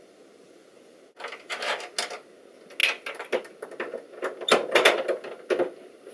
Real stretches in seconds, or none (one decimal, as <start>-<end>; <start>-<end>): 0.0-6.1